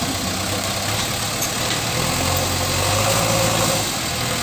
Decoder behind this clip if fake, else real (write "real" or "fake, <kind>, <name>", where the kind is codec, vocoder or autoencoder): real